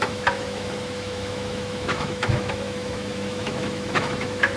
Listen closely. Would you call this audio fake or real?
fake